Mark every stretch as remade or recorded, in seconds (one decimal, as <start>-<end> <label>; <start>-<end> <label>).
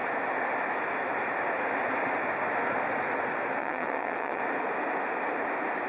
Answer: 0.0-3.6 recorded; 3.6-4.4 remade; 4.4-5.9 recorded